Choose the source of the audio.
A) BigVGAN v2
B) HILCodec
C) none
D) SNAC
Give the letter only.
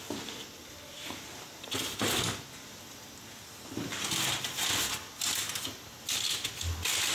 C